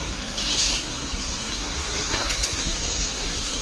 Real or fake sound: fake